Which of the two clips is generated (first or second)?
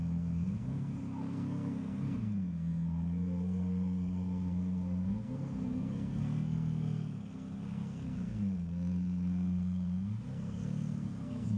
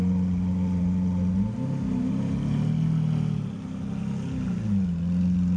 first